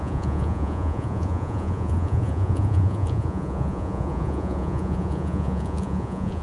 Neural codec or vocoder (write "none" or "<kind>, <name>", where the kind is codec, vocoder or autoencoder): vocoder, Vocos